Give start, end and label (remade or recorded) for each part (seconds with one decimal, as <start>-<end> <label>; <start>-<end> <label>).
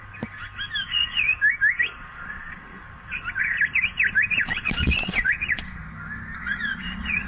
0.0-0.8 recorded; 0.8-1.3 remade; 1.3-2.0 recorded; 2.0-2.8 remade; 2.8-4.4 recorded; 4.4-5.8 remade; 5.8-6.4 recorded; 6.4-7.3 remade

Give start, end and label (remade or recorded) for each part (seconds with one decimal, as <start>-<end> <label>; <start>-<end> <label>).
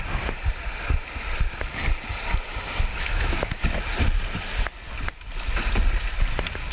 0.0-2.9 recorded; 2.9-3.6 remade; 3.6-6.7 recorded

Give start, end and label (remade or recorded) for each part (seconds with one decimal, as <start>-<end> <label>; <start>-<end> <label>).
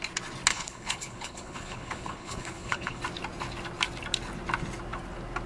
0.0-0.5 recorded; 0.5-3.0 remade; 3.0-5.5 recorded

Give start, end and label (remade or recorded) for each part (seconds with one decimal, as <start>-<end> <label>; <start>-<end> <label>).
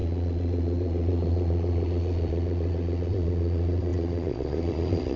0.0-5.2 remade